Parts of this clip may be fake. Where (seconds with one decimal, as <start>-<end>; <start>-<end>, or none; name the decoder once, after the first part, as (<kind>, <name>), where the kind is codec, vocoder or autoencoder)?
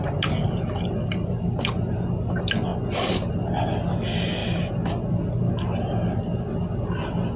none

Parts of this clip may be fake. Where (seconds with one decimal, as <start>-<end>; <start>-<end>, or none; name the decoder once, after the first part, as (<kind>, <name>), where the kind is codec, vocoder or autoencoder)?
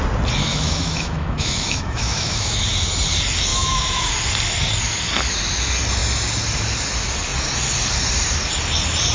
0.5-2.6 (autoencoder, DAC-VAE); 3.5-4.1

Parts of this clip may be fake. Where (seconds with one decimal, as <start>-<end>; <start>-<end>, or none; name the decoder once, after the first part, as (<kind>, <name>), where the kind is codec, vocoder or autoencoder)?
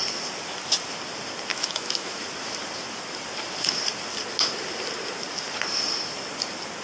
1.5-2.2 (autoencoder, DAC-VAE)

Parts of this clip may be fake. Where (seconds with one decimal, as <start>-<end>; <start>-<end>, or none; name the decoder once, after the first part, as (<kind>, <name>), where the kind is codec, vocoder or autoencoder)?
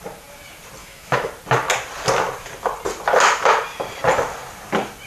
0.8-1.3 (autoencoder, DAC-VAE)